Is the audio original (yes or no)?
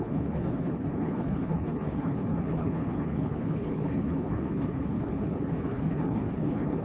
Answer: no